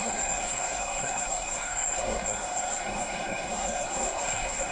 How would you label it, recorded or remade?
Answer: remade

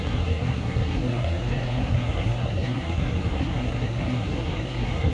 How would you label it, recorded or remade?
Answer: remade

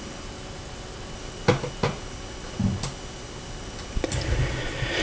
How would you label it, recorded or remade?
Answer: recorded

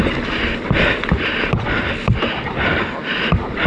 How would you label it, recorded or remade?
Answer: recorded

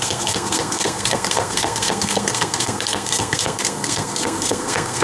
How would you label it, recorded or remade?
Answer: remade